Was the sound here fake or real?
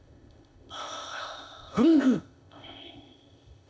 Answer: fake